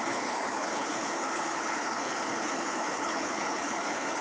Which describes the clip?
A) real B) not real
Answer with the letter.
B